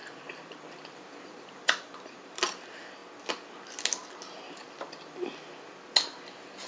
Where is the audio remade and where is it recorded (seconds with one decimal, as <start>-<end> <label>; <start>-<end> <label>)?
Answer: 0.0-2.0 remade; 2.0-6.7 recorded